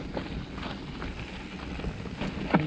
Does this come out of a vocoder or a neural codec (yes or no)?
no